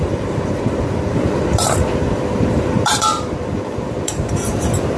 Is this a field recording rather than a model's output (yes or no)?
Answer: no